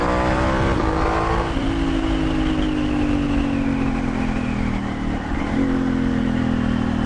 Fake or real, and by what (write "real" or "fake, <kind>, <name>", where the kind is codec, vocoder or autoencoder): real